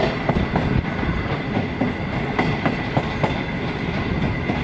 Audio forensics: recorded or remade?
recorded